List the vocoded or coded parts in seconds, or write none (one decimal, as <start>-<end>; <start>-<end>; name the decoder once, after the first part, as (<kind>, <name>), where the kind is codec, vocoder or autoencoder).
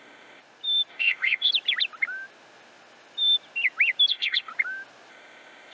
0.0-0.4 (codec, ZipCodec); 0.9-1.5; 4.1-4.5; 5.1-5.7